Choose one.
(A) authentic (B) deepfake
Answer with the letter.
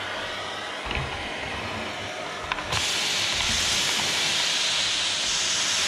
A